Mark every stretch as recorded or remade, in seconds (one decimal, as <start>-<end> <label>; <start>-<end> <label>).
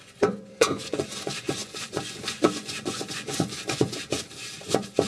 0.0-5.1 remade